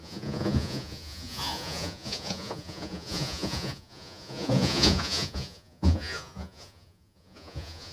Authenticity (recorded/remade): remade